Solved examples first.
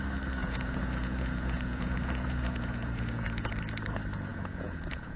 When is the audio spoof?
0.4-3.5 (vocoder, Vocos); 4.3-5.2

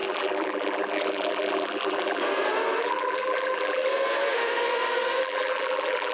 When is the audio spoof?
0.0-2.2 (vocoder, BigVGAN v2); 2.8-3.9; 5.2-6.1

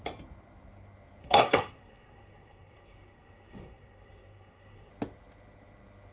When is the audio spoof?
1.2-4.9 (codec, SNAC)

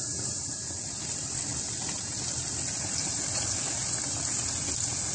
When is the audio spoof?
none

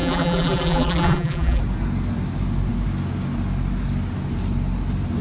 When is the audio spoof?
0.0-1.6 (vocoder, BigVGAN v2)

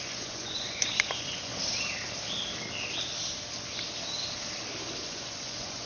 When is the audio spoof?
0.0-1.5 (vocoder, Vocos); 5.0-5.9

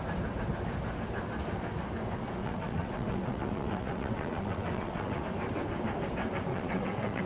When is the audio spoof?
2.4-5.2 (vocoder, WaveNeXt); 6.5-7.2